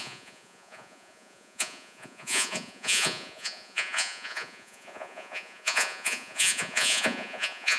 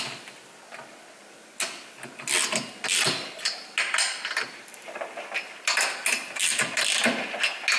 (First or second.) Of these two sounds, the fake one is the first